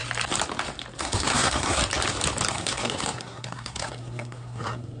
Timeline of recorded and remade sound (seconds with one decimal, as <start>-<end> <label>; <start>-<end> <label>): 0.0-1.0 recorded; 1.0-1.8 remade; 1.8-2.5 recorded; 2.5-5.0 remade

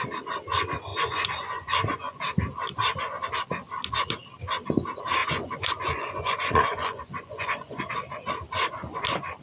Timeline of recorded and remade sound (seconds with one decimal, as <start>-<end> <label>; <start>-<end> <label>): 0.0-0.9 recorded; 0.9-2.2 remade; 2.2-5.2 recorded; 5.2-7.8 remade; 7.8-9.4 recorded

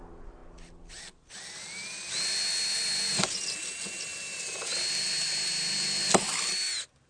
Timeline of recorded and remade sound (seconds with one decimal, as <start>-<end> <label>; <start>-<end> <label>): 0.0-7.1 recorded

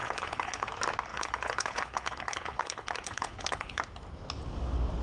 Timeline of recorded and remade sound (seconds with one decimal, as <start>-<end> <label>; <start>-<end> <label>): 0.0-0.7 remade; 0.7-1.1 recorded; 1.1-3.8 remade; 3.8-5.0 recorded

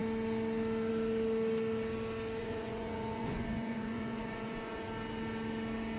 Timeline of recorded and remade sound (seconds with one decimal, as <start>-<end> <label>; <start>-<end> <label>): 0.0-2.4 recorded; 2.4-4.8 remade; 4.8-6.0 recorded

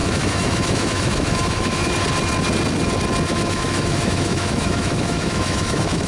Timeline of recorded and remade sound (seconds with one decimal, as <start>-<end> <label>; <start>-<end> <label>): 0.0-1.9 remade; 1.9-3.3 recorded; 3.3-6.1 remade